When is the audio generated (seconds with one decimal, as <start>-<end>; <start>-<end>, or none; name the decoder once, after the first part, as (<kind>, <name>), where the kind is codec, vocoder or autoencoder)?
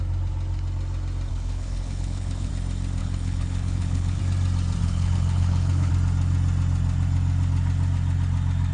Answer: 1.3-2.5 (codec, HILCodec); 3.0-4.2; 4.8-5.9